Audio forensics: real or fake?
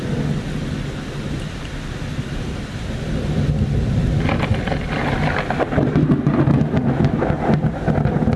real